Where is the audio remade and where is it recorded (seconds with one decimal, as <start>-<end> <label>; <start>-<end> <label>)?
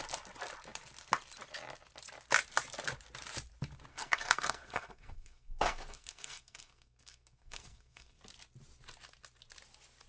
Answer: 0.0-3.9 recorded; 3.9-8.2 remade; 8.2-10.1 recorded